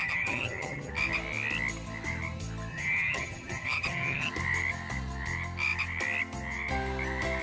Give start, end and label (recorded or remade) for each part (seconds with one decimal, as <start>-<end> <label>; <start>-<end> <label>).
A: 0.0-0.9 remade; 0.9-2.7 recorded; 2.7-4.3 remade; 4.3-7.4 recorded